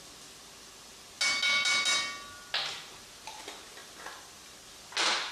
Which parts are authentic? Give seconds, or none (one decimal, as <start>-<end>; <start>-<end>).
0.0-5.3